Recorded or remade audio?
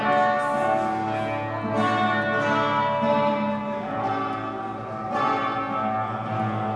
recorded